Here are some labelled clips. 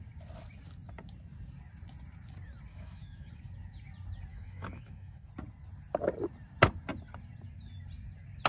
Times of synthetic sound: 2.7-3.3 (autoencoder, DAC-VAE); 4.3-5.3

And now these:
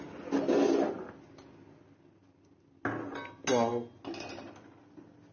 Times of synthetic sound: none

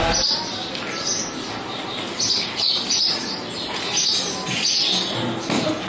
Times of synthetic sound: none

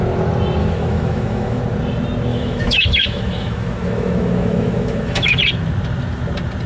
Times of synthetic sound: 0.6-1.6 (autoencoder, DAC-VAE); 2.3-5.4

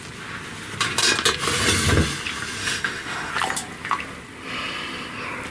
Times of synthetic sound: 2.6-3.3 (autoencoder, DAC-VAE)

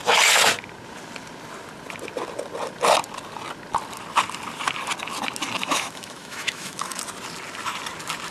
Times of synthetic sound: 5.6-7.0 (autoencoder, DAC-VAE)

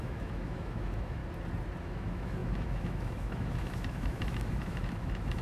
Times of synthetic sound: 0.0-1.2 (autoencoder, DAC-VAE); 1.8-5.4